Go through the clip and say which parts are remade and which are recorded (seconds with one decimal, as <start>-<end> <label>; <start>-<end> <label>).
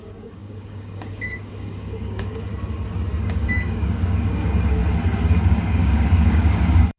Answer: 0.0-2.5 remade; 2.5-3.2 recorded; 3.2-4.8 remade; 4.8-5.4 recorded; 5.4-7.0 remade